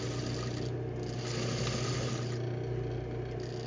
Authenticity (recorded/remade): recorded